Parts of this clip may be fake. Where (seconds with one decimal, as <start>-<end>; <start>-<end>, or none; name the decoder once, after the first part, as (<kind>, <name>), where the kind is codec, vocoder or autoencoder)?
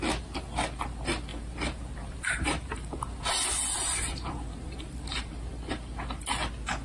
1.3-5.2 (vocoder, BigVGAN v2)